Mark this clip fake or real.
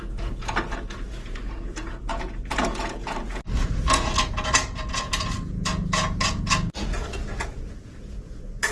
fake